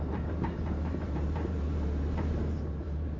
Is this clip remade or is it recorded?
remade